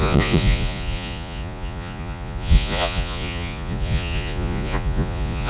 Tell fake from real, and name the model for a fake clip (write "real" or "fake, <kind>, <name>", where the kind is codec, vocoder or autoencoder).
fake, vocoder, Vocos